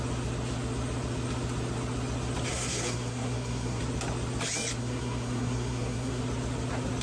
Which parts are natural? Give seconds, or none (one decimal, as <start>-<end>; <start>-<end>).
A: 0.0-2.5; 3.8-4.8; 6.2-7.0